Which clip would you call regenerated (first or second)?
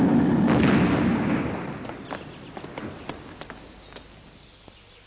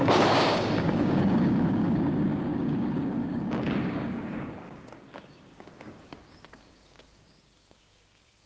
second